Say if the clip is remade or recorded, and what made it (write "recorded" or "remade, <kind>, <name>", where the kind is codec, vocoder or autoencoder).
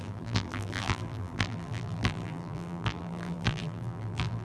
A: remade, vocoder, BigVGAN v2